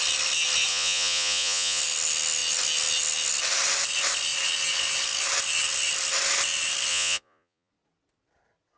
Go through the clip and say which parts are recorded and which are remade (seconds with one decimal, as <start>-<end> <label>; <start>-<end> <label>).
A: 0.0-0.7 recorded; 0.7-1.8 remade; 1.8-6.9 recorded; 6.9-7.7 remade; 7.7-8.8 recorded